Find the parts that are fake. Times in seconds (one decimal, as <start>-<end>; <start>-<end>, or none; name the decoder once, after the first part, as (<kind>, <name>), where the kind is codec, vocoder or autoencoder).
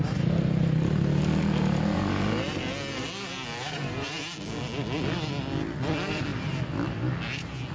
none